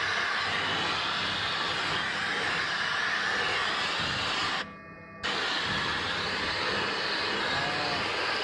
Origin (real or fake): real